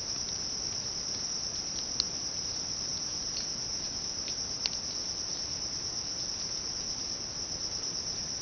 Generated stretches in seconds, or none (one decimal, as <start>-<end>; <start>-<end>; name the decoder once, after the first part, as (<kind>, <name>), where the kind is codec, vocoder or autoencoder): none